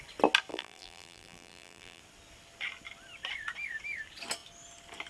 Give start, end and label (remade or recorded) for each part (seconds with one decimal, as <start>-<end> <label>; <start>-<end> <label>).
0.0-0.5 recorded; 0.5-2.0 remade; 2.0-5.1 recorded